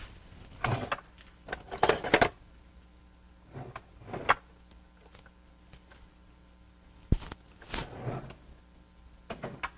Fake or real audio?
real